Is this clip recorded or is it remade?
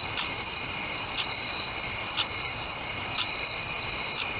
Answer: remade